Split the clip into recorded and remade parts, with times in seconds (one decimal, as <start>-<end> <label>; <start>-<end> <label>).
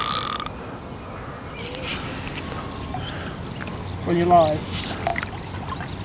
0.0-6.0 recorded